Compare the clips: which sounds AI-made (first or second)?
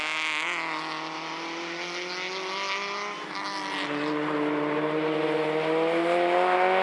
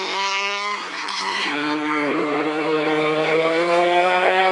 second